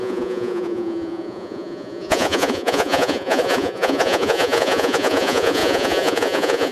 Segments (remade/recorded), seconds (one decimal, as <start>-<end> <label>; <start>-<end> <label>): 0.0-6.7 remade